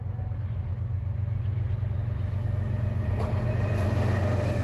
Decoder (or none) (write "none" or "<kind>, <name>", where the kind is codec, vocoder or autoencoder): none